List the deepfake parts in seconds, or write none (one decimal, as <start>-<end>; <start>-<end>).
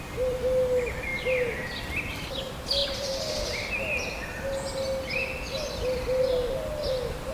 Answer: 2.8-3.7